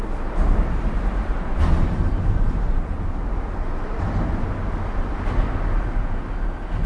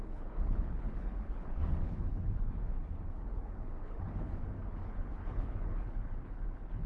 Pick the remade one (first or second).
second